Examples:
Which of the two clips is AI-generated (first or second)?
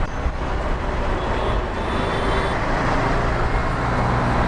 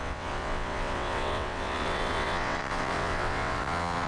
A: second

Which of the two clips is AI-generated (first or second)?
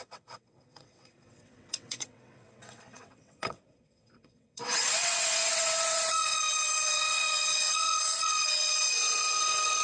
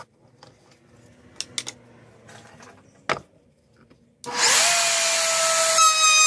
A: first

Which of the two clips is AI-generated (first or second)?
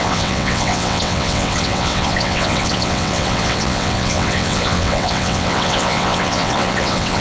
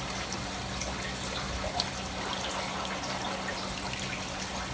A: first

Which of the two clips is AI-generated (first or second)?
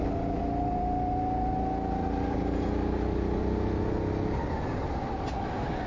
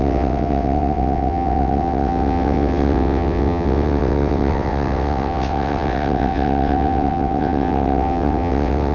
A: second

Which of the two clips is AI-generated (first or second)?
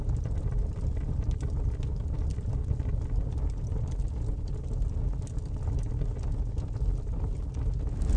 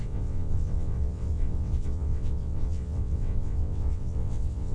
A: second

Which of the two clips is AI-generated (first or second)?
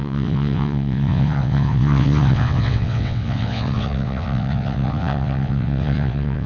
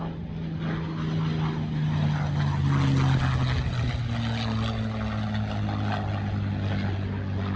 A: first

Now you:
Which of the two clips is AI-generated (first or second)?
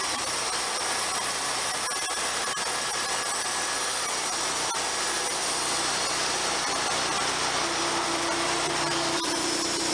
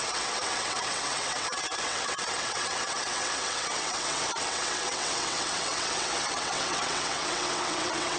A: second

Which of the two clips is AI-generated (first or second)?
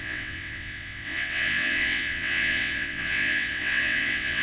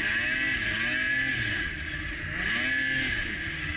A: first